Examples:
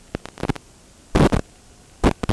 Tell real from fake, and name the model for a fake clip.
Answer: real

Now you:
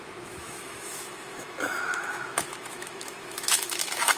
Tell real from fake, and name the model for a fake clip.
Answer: fake, autoencoder, DAC-VAE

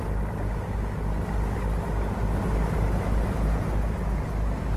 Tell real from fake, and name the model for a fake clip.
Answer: real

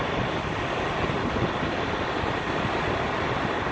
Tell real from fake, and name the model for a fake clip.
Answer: real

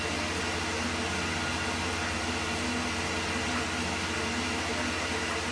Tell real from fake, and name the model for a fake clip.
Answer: real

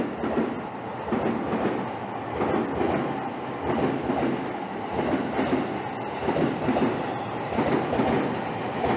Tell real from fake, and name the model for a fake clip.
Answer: real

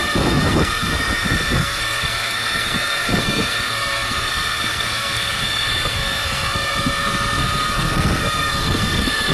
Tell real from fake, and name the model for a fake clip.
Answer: fake, codec, SNAC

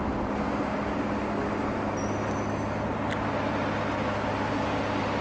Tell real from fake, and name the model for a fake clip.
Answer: real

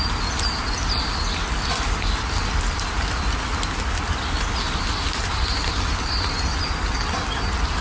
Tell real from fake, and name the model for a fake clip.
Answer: real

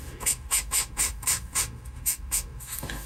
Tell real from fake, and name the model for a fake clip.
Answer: fake, autoencoder, DAC-VAE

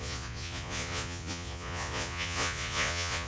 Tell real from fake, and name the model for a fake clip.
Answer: fake, vocoder, Vocos